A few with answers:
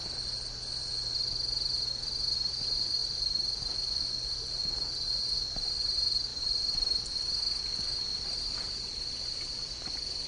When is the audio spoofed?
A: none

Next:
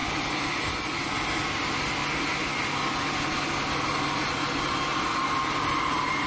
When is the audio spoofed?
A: none

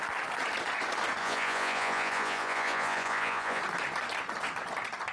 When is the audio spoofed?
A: 1.2-3.6 (vocoder, Vocos)

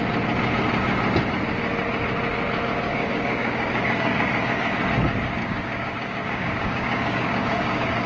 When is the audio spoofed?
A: 2.9-4.8 (codec, DAC); 5.4-8.1